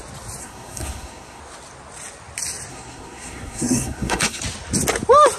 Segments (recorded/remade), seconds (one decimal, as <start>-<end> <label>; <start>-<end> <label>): 0.0-0.4 recorded; 0.4-1.4 remade; 1.4-2.7 recorded; 2.7-4.4 remade; 4.4-5.4 recorded